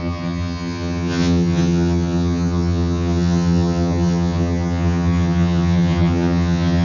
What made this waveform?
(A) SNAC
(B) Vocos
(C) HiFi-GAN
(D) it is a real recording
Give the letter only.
C